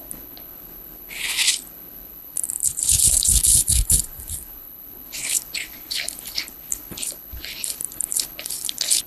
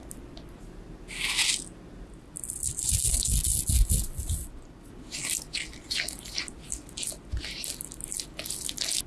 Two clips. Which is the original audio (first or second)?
second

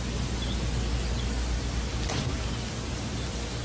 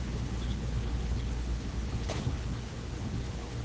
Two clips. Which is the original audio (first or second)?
first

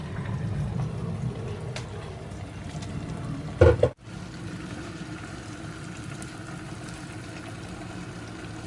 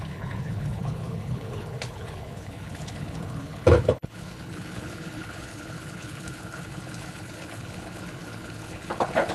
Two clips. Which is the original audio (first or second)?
first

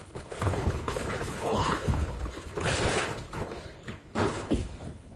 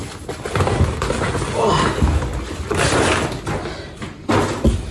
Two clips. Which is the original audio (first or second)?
second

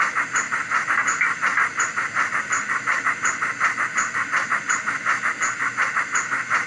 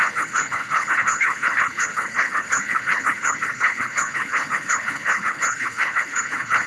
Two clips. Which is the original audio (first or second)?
first